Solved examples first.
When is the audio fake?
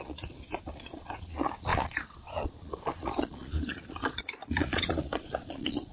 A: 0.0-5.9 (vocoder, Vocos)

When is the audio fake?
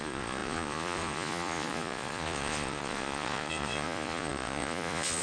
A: 0.0-5.2 (vocoder, Vocos)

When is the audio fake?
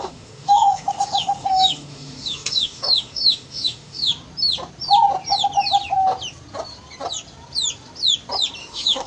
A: 0.0-4.1 (autoencoder, DAC-VAE); 8.6-9.1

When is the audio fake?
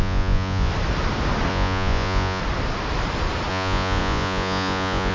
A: 0.0-0.7 (vocoder, Vocos); 1.5-2.4; 3.5-5.1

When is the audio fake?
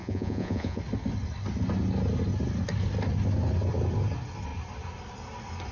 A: 0.0-0.8 (vocoder, Vocos)